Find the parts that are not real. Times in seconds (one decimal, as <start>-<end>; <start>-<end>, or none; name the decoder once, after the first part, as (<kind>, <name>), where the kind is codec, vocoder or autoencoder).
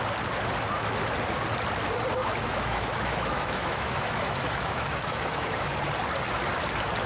2.2-5.7 (autoencoder, DAC-VAE)